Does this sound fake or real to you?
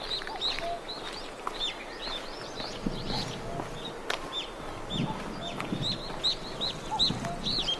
real